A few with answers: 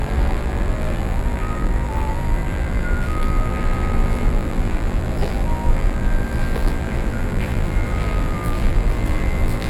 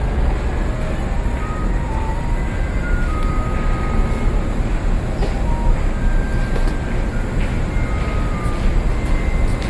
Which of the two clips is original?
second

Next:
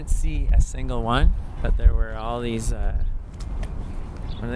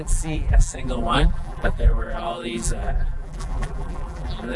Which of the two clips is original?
first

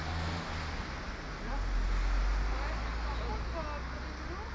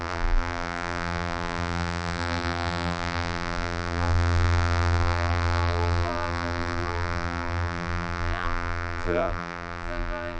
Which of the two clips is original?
first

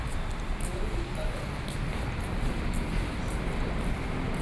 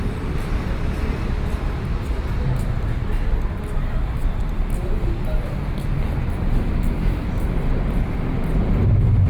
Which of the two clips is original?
second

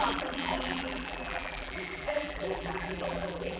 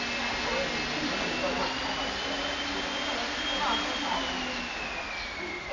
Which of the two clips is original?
second